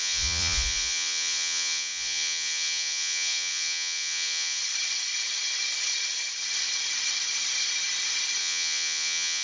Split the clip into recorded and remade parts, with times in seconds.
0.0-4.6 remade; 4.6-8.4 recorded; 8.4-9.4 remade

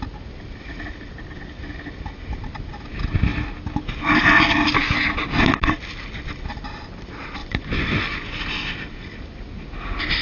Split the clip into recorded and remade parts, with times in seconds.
0.0-7.4 recorded; 7.4-8.4 remade; 8.4-10.2 recorded

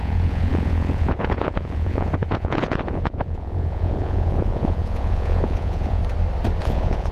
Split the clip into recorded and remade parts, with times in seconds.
0.0-6.0 remade; 6.0-6.6 recorded; 6.6-7.1 remade

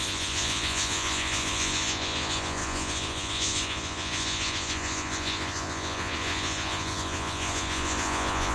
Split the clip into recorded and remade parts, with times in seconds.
0.0-8.5 remade

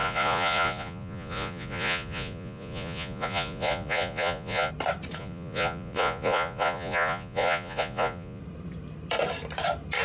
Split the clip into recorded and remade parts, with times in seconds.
0.0-4.7 remade; 4.7-5.2 recorded; 5.2-8.4 remade; 8.4-10.0 recorded